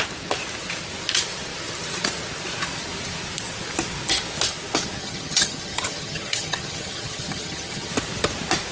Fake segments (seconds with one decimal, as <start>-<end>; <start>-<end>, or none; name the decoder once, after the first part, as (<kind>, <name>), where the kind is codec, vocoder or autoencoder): 5.0-7.9 (vocoder, HiFi-GAN)